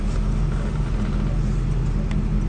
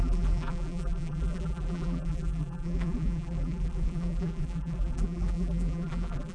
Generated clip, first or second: second